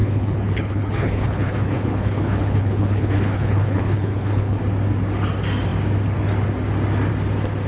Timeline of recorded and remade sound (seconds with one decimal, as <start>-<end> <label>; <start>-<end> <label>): 0.0-4.6 remade; 4.6-7.7 recorded